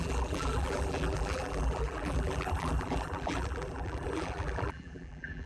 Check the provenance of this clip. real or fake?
fake